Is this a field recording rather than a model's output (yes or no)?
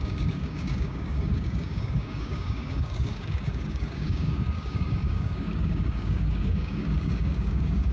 no